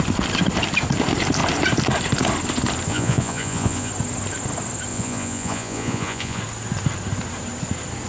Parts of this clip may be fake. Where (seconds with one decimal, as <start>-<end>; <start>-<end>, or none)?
2.9-3.9; 4.9-6.4